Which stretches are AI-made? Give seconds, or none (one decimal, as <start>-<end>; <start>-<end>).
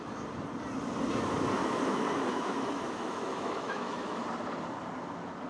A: 1.6-4.2